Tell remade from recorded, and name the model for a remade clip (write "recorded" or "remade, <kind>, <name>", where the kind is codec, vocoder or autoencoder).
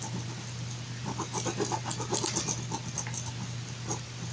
recorded